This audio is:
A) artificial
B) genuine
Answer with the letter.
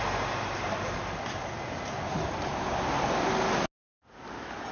B